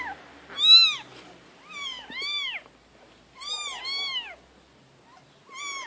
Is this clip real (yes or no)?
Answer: yes